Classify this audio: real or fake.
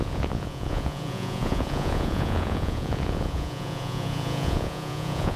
fake